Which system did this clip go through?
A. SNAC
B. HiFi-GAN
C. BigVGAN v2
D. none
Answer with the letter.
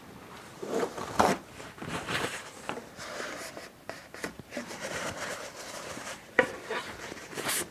C